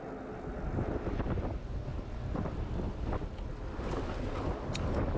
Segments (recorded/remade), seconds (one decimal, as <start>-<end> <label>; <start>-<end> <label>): 0.0-5.2 recorded